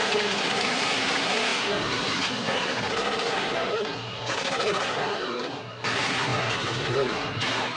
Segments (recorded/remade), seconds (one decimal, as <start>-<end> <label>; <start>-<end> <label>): 0.0-7.8 remade